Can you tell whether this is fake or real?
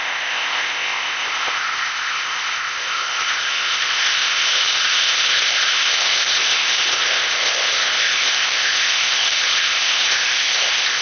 fake